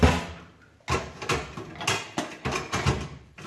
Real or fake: real